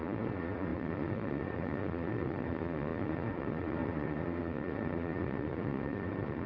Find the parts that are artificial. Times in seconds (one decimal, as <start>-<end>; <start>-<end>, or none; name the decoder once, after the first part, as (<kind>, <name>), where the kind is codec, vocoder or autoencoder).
0.0-6.5 (vocoder, Vocos)